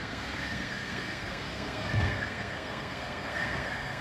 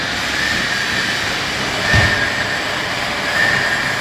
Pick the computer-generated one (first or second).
first